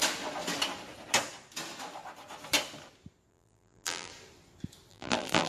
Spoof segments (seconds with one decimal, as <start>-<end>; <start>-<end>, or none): 3.3-4.1; 4.9-5.5